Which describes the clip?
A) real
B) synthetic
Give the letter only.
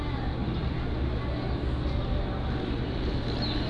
A